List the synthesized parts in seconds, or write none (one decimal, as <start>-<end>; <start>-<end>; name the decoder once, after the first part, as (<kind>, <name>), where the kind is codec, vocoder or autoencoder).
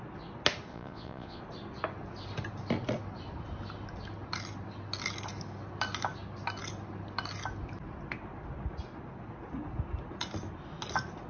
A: 0.7-1.4 (vocoder, Vocos)